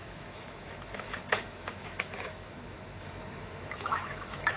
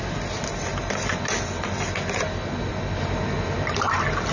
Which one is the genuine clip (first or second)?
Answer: second